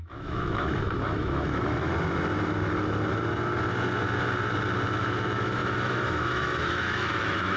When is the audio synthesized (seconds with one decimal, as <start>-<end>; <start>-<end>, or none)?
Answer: 0.0-1.9; 5.0-7.6